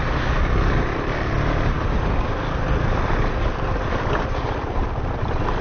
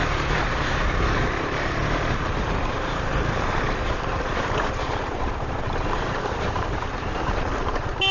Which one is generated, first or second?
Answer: second